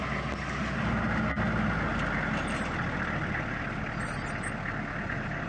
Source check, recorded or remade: recorded